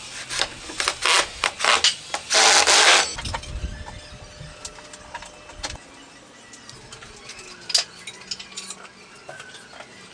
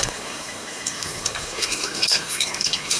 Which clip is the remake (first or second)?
second